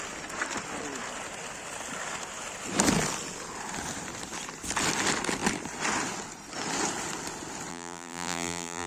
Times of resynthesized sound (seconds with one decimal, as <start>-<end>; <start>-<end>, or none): 7.7-8.9